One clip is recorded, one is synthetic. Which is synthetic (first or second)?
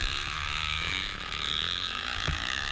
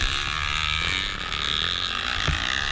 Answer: first